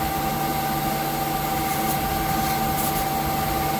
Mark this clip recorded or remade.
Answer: recorded